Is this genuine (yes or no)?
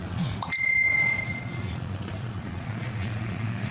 no